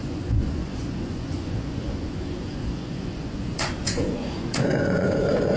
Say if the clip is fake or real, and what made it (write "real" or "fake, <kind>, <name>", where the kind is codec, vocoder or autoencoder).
fake, vocoder, Vocos